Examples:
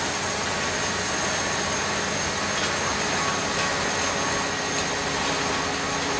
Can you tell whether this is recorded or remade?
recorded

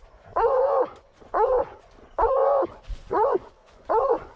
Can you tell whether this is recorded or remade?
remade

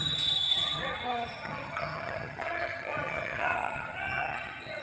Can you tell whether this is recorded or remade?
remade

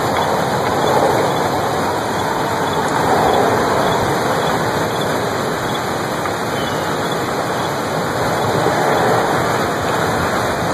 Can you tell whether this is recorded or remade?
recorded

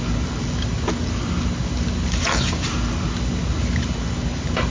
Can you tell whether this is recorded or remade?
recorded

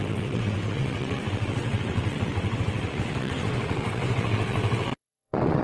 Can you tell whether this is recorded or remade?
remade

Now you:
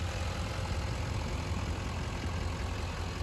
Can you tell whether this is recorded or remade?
recorded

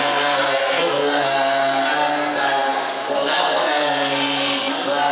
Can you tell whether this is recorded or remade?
remade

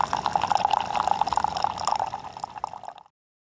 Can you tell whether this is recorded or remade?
recorded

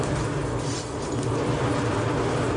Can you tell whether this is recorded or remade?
recorded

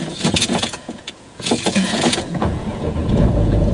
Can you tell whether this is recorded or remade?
remade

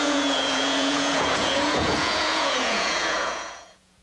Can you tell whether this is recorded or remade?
remade